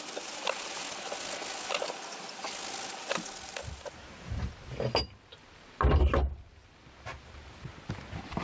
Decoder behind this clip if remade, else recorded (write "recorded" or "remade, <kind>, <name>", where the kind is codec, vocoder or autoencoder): recorded